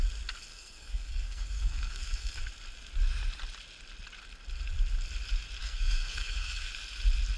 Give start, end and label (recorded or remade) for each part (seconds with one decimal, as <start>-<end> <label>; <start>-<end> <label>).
0.0-0.5 recorded; 0.5-2.4 remade; 2.4-5.6 recorded; 5.6-6.7 remade; 6.7-7.4 recorded